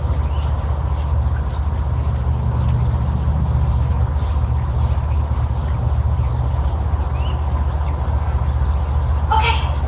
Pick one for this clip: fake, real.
real